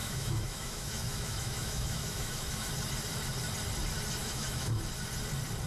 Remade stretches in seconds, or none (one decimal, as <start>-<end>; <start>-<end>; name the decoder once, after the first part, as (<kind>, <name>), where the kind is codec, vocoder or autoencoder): 0.0-2.7 (autoencoder, DAC-VAE); 4.2-4.8